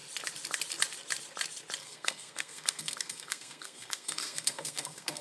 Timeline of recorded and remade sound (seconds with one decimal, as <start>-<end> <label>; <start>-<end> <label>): 0.0-1.8 recorded; 1.8-5.2 remade